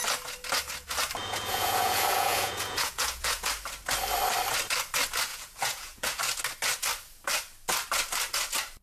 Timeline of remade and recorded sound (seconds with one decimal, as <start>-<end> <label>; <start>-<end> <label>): 0.0-1.2 recorded; 1.2-3.5 remade; 3.5-5.3 recorded; 5.3-6.2 remade; 6.2-8.8 recorded